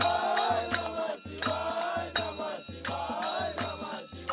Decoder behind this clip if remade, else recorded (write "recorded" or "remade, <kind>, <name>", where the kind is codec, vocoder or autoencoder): recorded